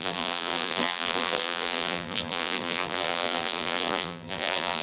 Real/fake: fake